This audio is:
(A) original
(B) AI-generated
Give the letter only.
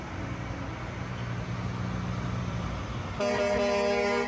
A